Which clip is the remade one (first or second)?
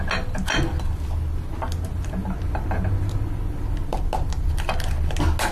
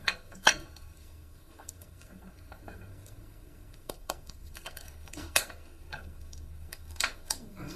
second